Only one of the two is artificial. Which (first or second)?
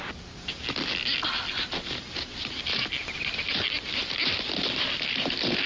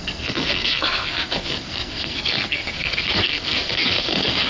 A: second